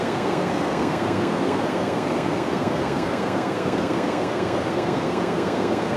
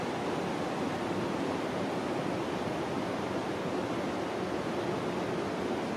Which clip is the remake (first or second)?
first